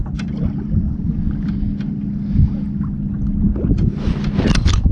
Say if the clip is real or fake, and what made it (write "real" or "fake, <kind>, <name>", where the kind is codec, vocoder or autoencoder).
real